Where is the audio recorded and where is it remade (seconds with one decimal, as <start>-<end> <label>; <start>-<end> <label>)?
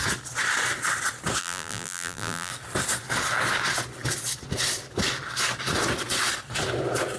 0.0-1.4 recorded; 1.4-2.5 remade; 2.5-7.2 recorded